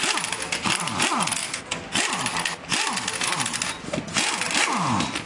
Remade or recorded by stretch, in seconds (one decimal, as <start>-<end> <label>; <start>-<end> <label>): 0.0-5.3 recorded